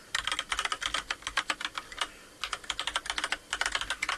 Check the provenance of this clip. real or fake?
real